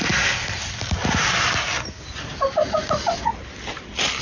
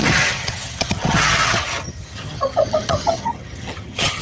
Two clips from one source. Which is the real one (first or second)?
first